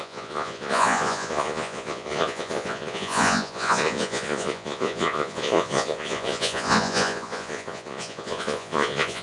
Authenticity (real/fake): fake